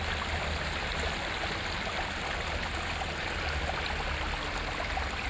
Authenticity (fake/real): real